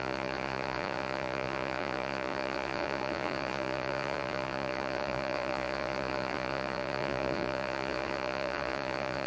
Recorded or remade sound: remade